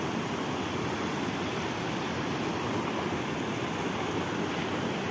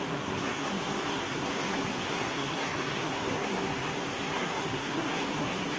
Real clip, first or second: first